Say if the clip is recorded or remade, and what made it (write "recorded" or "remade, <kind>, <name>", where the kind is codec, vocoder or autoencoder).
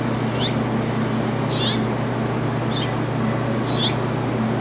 recorded